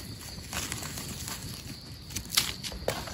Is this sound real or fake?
real